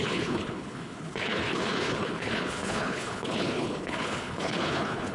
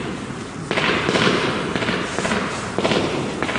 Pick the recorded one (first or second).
second